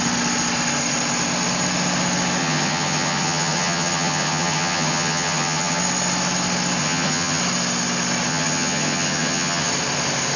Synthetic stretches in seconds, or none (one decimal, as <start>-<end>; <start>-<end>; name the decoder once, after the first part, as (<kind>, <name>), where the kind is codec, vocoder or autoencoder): 2.4-5.8 (vocoder, HiFi-GAN); 6.8-7.4; 8.3-9.7